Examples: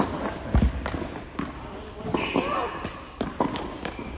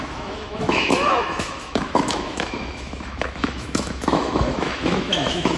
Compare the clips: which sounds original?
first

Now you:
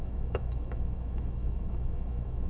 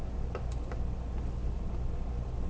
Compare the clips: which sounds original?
second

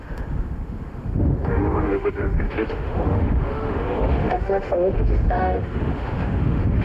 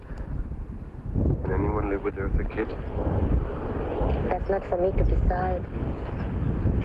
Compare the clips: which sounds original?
second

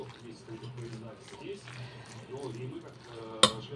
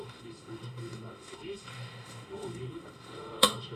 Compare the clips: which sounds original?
first